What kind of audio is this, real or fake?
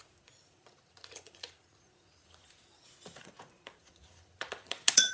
fake